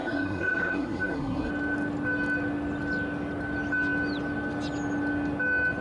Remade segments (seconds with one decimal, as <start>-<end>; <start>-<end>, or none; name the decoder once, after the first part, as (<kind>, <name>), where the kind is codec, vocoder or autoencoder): 0.0-1.5 (codec, SNAC)